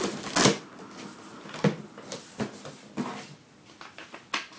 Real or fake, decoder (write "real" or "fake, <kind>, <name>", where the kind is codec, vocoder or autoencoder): real